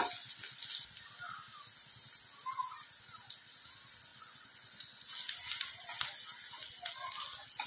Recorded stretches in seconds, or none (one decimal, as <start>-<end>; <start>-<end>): 0.0-4.1; 5.1-7.7